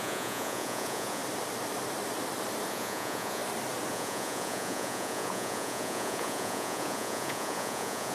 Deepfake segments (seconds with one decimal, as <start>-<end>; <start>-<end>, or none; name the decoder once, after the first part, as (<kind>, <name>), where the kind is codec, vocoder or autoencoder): 0.0-1.2 (vocoder, Vocos); 2.7-3.4; 3.9-8.1